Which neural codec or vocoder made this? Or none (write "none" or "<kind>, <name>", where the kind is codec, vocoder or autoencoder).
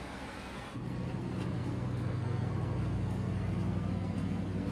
codec, SNAC